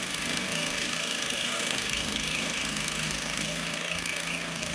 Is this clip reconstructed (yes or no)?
yes